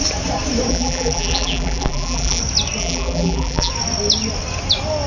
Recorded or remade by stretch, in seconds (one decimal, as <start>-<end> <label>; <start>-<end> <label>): 0.0-0.7 recorded; 0.7-2.4 remade; 2.4-2.8 recorded; 2.8-3.7 remade; 3.7-5.1 recorded